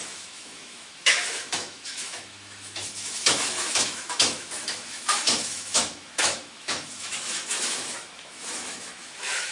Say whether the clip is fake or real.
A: fake